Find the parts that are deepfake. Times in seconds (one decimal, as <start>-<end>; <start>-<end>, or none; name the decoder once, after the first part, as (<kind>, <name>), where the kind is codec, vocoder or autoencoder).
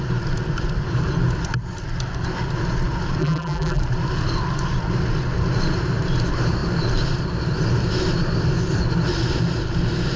3.2-3.8 (vocoder, BigVGAN v2)